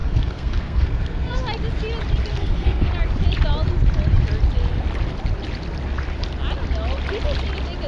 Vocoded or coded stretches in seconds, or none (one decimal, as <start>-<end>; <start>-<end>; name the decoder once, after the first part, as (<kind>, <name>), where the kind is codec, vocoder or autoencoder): 0.0-1.4 (codec, SNAC); 2.3-2.9